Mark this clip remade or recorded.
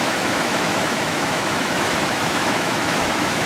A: remade